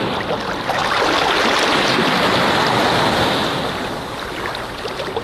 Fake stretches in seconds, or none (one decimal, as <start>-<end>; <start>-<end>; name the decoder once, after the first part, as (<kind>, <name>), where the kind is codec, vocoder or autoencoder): none